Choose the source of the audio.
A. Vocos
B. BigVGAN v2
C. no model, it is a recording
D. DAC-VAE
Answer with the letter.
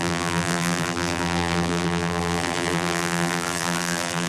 B